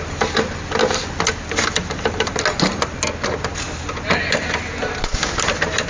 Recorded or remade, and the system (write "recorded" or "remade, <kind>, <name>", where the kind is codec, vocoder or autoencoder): recorded